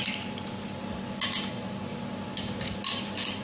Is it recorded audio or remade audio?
recorded